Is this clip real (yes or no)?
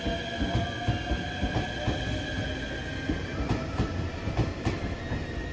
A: yes